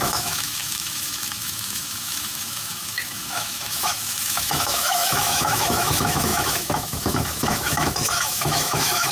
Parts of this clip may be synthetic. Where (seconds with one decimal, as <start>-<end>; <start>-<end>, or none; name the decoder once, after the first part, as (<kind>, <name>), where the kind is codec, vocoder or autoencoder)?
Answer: 0.0-9.1 (autoencoder, DAC-VAE)